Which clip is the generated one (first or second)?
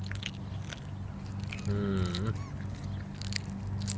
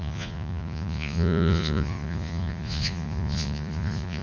second